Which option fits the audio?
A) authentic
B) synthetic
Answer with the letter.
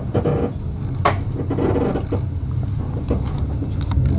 A